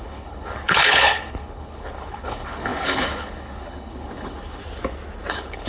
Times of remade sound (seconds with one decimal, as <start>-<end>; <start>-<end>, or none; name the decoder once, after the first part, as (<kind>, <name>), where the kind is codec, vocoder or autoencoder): 0.0-4.6 (codec, HILCodec); 5.3-5.7